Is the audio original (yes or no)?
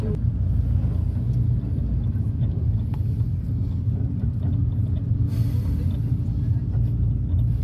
yes